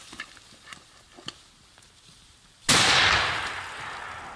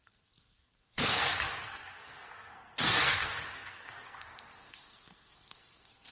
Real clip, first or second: first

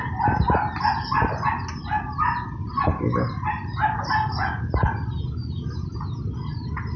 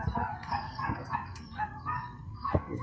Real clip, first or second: first